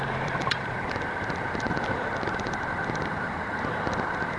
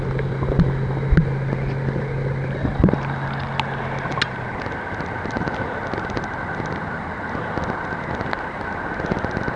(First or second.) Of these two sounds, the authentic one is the second